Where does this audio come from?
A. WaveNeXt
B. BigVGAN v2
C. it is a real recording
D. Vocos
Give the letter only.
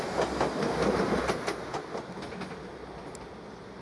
C